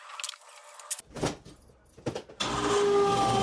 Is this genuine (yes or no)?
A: yes